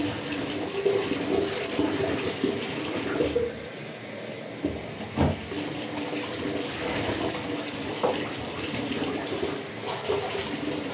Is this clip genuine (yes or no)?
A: yes